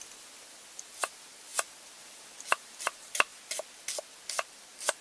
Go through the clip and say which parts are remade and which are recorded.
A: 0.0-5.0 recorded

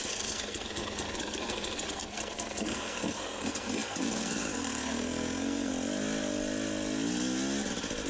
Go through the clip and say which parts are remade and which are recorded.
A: 0.0-5.7 remade; 5.7-8.1 recorded

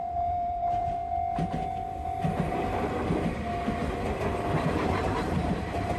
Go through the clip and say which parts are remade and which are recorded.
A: 0.0-1.0 remade; 1.0-4.6 recorded; 4.6-6.0 remade

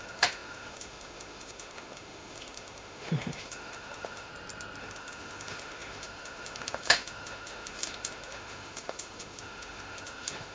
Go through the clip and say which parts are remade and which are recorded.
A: 0.0-4.3 remade; 4.3-4.8 recorded; 4.8-10.5 remade

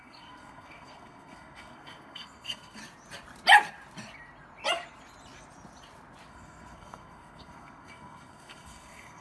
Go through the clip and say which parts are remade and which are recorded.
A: 0.0-2.8 remade; 2.8-6.3 recorded; 6.3-9.2 remade